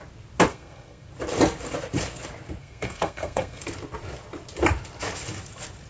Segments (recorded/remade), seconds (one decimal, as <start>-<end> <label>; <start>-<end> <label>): 0.0-0.5 recorded; 0.5-1.1 remade; 1.1-2.6 recorded; 2.6-3.6 remade; 3.6-5.9 recorded